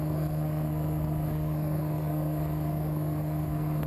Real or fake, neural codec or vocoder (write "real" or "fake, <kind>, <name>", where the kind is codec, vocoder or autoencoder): fake, codec, SNAC